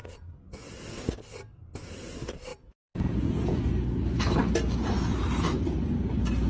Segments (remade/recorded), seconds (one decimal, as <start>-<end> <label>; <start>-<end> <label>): 0.0-0.7 remade; 0.7-2.5 recorded; 2.5-3.6 remade; 3.6-6.5 recorded